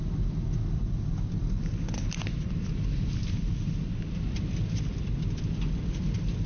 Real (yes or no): no